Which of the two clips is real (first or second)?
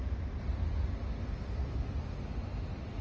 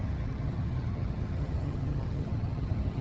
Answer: first